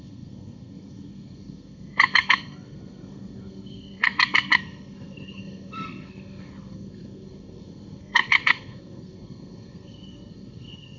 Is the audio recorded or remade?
remade